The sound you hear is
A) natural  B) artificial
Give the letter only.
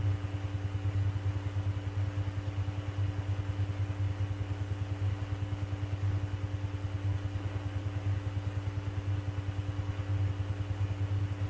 A